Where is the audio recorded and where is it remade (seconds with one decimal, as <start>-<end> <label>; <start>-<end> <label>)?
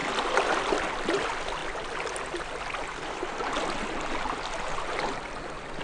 0.0-5.8 recorded